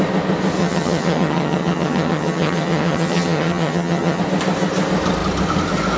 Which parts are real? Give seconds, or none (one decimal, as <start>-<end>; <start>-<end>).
0.0-0.6; 4.2-6.0